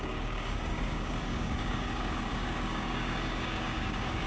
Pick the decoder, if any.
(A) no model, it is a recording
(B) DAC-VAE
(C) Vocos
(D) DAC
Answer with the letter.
D